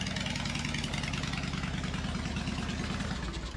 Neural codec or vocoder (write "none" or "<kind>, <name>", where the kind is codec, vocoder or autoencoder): none